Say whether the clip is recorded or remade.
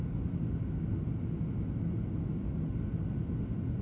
recorded